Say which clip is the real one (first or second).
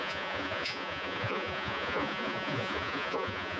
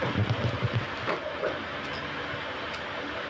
second